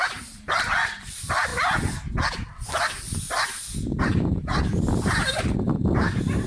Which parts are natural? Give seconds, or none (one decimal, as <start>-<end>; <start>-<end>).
1.5-4.0